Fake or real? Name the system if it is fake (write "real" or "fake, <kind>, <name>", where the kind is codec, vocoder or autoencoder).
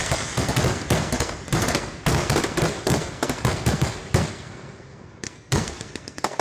fake, codec, SNAC